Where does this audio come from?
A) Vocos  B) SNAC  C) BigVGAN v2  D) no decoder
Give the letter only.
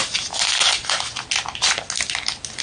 D